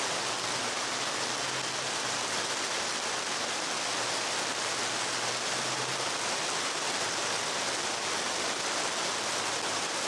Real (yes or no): yes